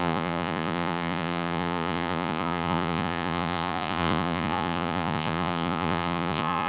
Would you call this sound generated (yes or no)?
yes